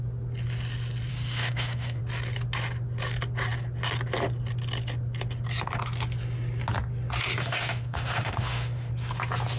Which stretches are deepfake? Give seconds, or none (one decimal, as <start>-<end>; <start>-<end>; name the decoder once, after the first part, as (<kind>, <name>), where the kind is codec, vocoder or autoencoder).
1.1-2.0 (autoencoder, DAC-VAE); 7.4-8.9